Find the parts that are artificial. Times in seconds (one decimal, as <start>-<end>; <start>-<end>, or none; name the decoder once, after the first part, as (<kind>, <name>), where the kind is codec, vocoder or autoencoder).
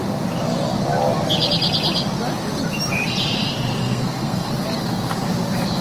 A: 3.8-4.5 (codec, SNAC)